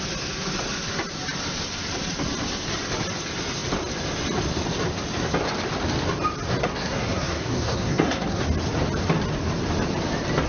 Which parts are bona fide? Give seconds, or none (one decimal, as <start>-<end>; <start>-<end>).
0.0-6.6; 8.4-10.5